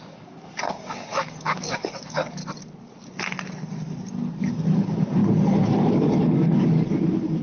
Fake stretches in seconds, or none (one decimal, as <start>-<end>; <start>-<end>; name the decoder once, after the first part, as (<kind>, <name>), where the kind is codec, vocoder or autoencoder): 0.0-2.4 (codec, DAC); 4.5-5.2; 5.9-7.4